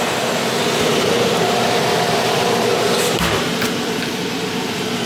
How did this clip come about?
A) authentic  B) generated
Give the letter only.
B